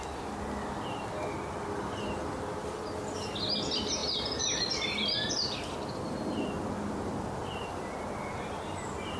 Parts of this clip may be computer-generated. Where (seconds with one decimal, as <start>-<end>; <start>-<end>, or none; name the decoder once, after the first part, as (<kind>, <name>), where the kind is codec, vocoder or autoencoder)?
none